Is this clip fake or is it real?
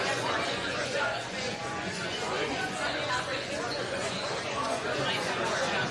fake